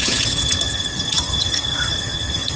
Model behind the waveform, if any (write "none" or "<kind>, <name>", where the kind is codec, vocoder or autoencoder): vocoder, HiFi-GAN